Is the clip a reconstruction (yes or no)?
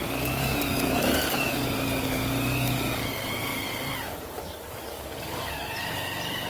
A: yes